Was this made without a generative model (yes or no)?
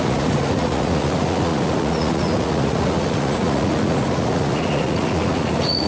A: no